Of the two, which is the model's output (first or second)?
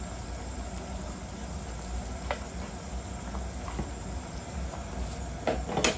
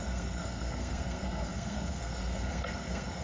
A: second